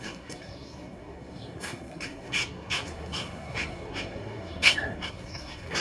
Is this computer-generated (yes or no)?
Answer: yes